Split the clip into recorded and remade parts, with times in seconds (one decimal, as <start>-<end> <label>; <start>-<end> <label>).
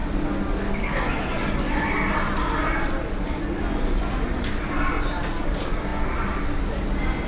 0.0-7.3 recorded